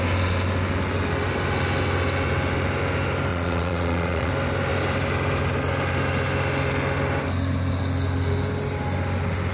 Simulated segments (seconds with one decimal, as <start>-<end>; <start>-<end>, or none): 3.3-4.3